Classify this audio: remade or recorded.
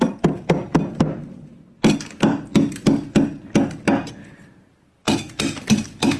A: recorded